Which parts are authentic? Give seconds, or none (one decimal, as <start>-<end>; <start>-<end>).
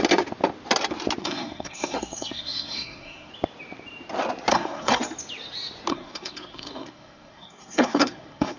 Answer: 0.0-1.2; 3.3-4.5; 5.0-5.9